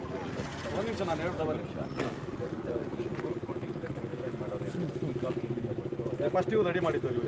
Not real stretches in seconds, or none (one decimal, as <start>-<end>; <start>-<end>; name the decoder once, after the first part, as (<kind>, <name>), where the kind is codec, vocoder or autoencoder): 0.0-0.5 (vocoder, Vocos); 1.6-4.1